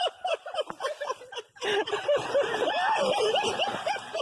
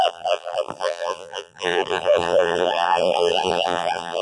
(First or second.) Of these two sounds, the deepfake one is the second